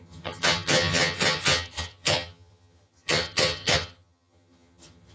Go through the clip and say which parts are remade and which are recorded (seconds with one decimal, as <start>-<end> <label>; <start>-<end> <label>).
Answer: 0.0-5.1 remade